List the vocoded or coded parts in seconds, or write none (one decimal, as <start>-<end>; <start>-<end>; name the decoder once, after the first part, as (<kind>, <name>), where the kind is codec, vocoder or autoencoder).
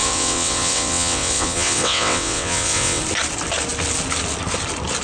0.0-3.0 (vocoder, WaveNeXt)